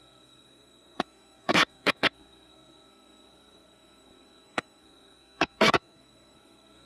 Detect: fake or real fake